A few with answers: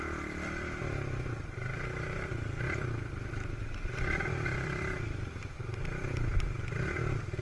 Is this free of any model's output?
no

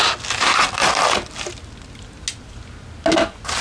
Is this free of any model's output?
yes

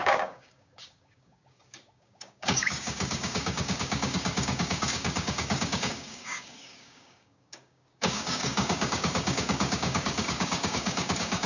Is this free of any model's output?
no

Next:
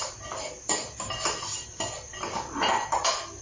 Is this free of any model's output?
yes